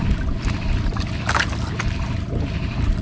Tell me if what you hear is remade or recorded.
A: recorded